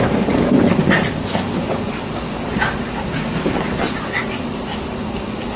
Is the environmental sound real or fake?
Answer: real